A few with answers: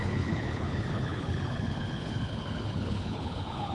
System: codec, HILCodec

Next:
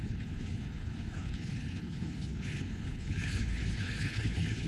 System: codec, HILCodec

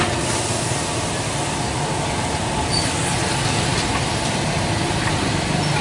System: none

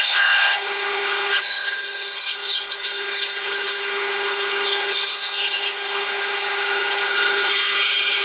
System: codec, HILCodec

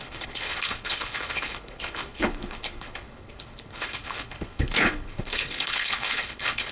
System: codec, HILCodec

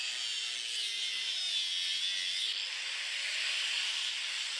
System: none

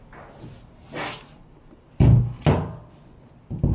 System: none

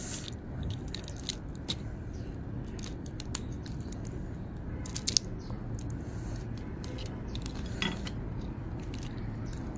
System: none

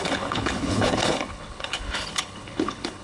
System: codec, HILCodec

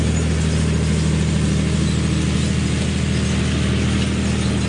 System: none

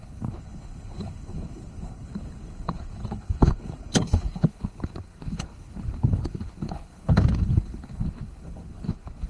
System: codec, HILCodec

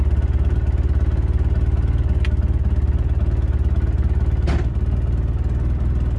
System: none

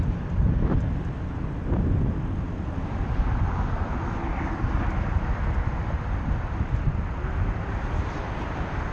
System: none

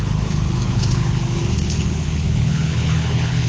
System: codec, HILCodec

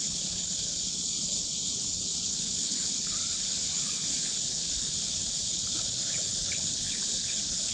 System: codec, HILCodec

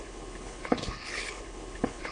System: codec, HILCodec